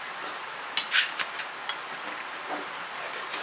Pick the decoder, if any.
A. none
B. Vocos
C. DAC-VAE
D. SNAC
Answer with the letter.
A